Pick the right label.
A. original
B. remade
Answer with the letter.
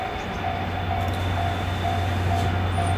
A